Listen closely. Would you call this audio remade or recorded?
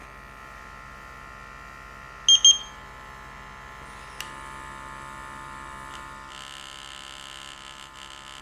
recorded